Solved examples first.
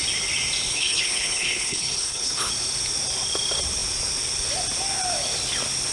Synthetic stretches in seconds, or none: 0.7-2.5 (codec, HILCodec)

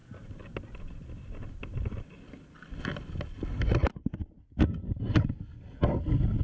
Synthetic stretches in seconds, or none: none

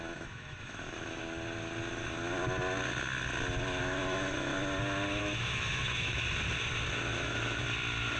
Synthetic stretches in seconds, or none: 0.0-1.2 (autoencoder, DAC-VAE); 3.8-4.5; 5.2-6.2; 6.9-7.6

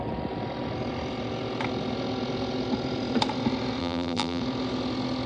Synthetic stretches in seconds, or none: 3.8-4.4 (vocoder, BigVGAN v2)

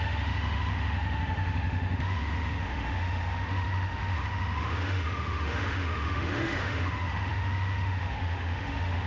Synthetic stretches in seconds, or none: 0.0-9.1 (autoencoder, DAC-VAE)

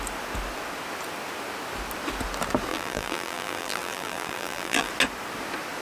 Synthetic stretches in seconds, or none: 2.7-4.9 (vocoder, BigVGAN v2)

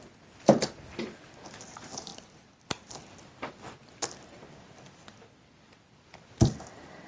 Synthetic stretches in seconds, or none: none

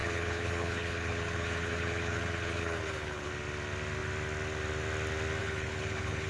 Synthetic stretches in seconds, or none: 0.0-3.3 (codec, HILCodec); 5.4-6.3